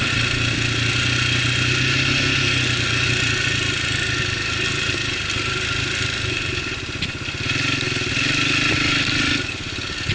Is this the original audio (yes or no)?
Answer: yes